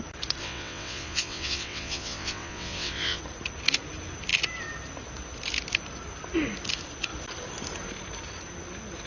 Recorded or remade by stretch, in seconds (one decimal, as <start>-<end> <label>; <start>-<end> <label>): 0.0-0.4 recorded; 0.4-3.2 remade; 3.2-9.1 recorded